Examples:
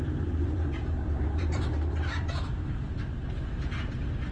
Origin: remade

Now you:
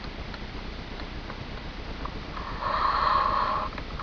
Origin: recorded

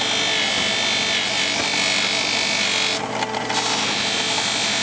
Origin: recorded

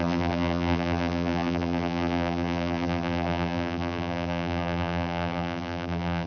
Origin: remade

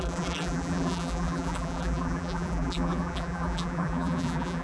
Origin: remade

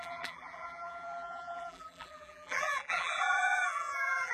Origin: remade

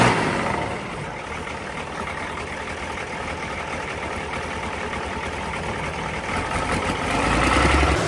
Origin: recorded